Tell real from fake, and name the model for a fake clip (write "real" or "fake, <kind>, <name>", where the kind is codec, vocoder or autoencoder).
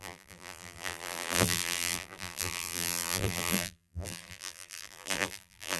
fake, vocoder, BigVGAN v2